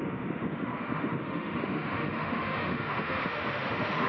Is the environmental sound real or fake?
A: fake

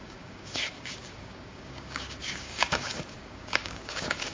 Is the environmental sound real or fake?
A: fake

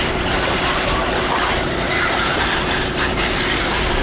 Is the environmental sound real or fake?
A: real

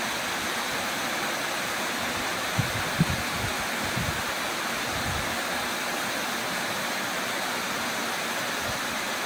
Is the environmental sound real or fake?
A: real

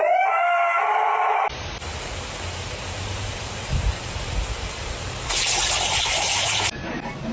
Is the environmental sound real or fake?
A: real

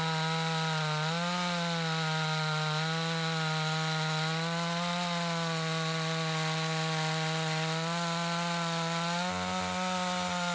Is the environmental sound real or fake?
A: real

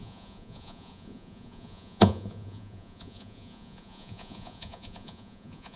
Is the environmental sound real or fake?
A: fake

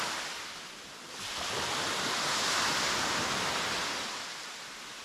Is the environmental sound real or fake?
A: real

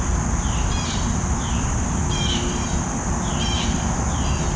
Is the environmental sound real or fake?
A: real